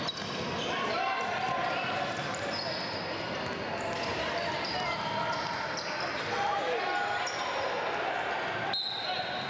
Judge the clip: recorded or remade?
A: recorded